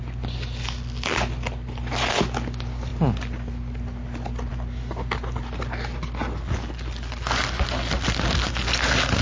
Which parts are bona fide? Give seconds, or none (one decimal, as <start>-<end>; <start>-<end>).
0.0-9.2

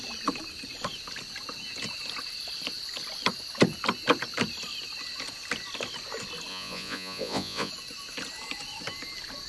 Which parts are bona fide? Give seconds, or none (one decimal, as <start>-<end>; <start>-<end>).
0.0-6.5; 7.7-9.5

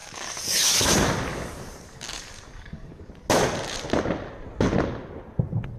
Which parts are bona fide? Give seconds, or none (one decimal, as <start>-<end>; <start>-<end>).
0.9-1.3; 3.1-5.8

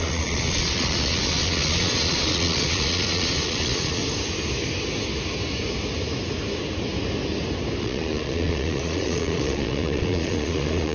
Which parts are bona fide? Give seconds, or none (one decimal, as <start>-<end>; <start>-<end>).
4.0-7.8